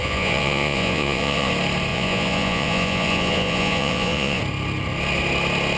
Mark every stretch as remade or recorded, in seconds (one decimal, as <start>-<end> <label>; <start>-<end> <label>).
0.0-1.5 remade; 1.5-1.9 recorded; 1.9-4.4 remade; 4.4-5.8 recorded